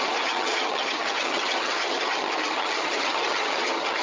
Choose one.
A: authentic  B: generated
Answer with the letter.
B